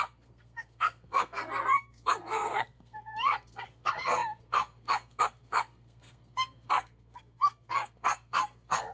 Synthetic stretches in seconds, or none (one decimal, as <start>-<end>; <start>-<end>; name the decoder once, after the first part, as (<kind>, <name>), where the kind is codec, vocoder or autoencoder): 0.0-8.9 (codec, SNAC)